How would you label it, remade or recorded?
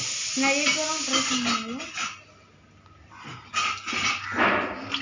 recorded